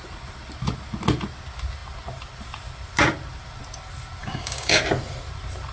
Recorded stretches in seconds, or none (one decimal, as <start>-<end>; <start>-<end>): 0.0-4.2; 4.8-5.7